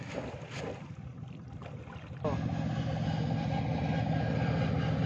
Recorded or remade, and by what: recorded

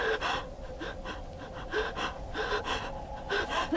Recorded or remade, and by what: recorded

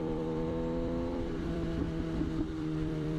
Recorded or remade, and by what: remade, vocoder, BigVGAN v2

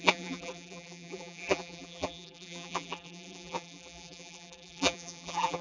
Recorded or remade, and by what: remade, vocoder, BigVGAN v2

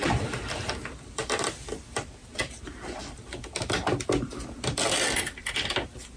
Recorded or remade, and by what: remade, vocoder, BigVGAN v2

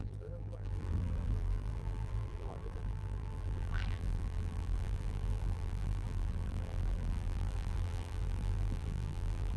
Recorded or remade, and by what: remade, vocoder, BigVGAN v2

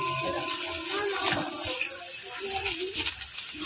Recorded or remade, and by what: recorded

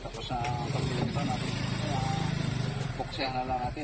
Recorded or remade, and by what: remade, vocoder, BigVGAN v2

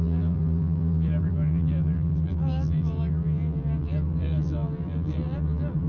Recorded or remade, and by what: remade, vocoder, BigVGAN v2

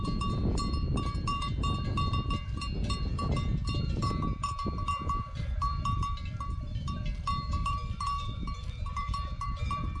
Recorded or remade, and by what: remade, vocoder, BigVGAN v2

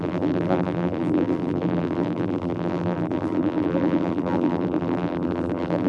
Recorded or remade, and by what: remade, vocoder, BigVGAN v2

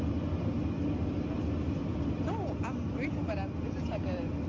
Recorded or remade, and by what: recorded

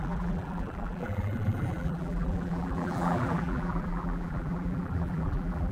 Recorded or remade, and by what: remade, vocoder, BigVGAN v2